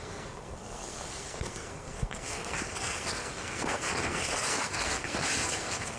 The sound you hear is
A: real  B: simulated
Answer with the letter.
B